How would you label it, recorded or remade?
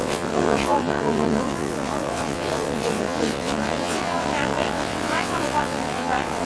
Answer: remade